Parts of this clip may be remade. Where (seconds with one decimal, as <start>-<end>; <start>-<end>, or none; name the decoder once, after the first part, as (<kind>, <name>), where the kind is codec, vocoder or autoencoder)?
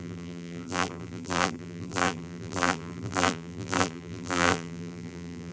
0.0-5.5 (vocoder, BigVGAN v2)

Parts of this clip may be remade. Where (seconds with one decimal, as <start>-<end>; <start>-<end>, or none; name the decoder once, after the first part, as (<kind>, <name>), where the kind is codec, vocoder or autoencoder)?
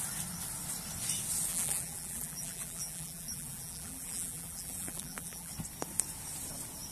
1.5-5.5 (vocoder, BigVGAN v2)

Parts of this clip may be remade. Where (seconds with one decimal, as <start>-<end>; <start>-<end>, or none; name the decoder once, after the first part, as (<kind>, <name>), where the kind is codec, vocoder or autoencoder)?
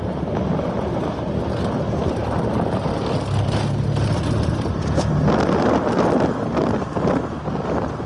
none